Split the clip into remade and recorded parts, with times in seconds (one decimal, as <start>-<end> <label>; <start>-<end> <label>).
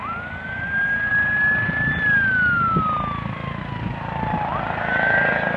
0.0-5.6 recorded